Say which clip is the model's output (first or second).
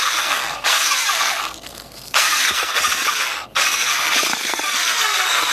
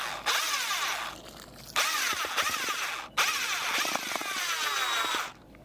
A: first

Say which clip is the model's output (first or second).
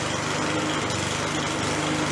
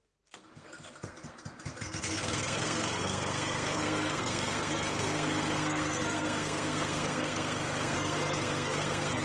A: second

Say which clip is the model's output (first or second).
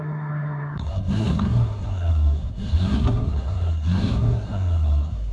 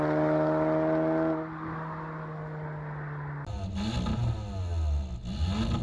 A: first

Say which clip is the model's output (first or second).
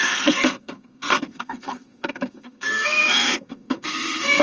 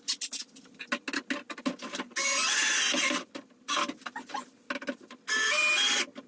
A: first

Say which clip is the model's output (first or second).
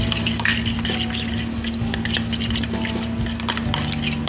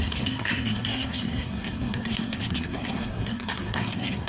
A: second